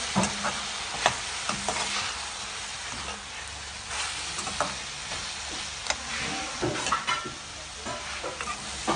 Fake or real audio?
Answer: real